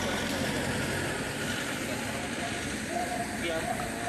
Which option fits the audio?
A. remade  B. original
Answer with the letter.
B